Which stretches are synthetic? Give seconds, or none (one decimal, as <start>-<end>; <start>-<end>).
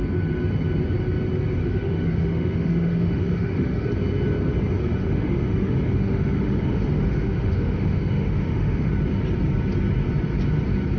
1.6-3.9; 4.8-8.9